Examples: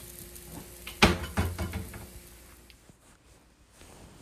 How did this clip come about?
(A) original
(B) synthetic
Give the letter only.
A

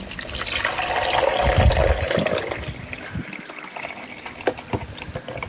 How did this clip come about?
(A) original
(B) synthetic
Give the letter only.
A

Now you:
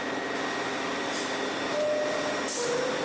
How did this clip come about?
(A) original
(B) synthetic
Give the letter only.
A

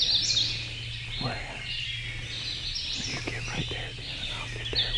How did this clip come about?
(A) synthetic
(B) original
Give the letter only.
B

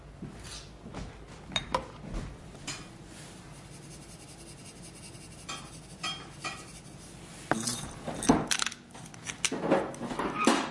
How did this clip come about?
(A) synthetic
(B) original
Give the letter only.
B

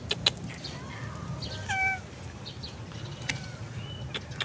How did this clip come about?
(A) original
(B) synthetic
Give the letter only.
A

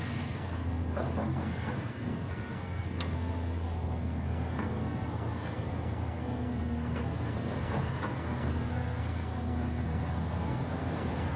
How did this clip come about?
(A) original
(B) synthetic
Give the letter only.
B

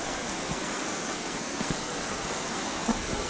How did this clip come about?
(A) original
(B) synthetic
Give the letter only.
B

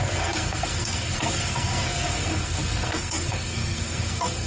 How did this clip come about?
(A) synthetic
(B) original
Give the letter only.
A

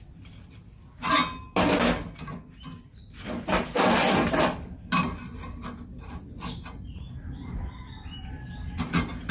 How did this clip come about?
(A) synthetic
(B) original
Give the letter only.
B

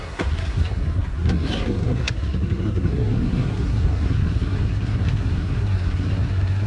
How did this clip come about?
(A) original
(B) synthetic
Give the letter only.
B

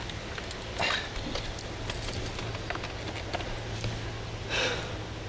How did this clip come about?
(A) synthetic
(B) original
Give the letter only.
B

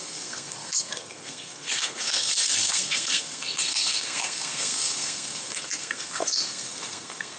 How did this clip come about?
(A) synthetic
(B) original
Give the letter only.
A